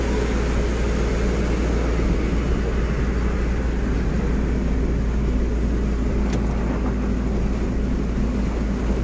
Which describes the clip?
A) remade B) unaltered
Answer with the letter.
B